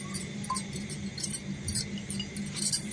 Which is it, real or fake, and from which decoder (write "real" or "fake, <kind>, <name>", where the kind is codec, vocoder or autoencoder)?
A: fake, vocoder, BigVGAN v2